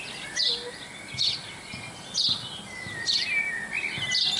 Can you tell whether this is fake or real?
real